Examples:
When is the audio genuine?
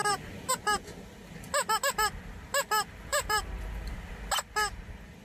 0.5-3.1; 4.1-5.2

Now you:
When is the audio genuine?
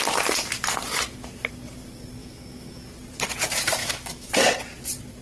0.0-2.2; 2.8-3.8; 4.3-5.2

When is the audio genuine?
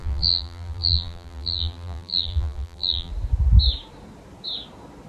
3.1-5.1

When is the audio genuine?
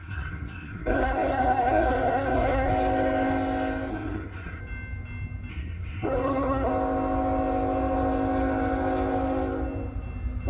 2.7-3.9; 4.6-5.5; 6.7-10.5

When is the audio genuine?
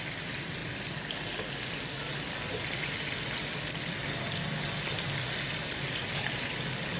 0.0-7.0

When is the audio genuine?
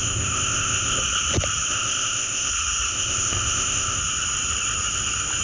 1.0-1.7; 2.5-2.9; 4.0-5.4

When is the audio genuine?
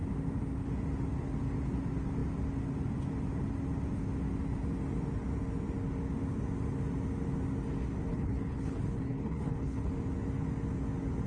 0.0-8.1; 9.9-11.3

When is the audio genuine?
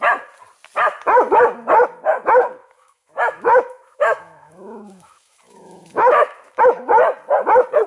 0.0-2.6; 6.6-7.9